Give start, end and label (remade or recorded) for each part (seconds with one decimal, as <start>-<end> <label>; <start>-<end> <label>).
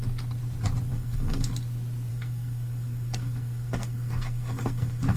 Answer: 0.0-0.9 recorded; 0.9-1.5 remade; 1.5-2.1 recorded; 2.1-5.2 remade